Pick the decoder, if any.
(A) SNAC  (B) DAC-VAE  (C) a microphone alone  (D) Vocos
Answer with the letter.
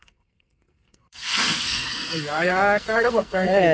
A